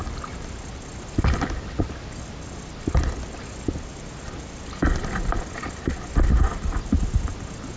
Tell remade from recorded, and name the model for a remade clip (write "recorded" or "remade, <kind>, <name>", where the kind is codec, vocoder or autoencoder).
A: recorded